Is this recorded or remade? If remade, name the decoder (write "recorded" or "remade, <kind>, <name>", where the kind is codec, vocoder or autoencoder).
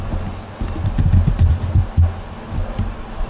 recorded